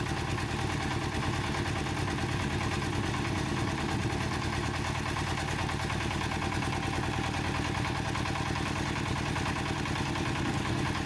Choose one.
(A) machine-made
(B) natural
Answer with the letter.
B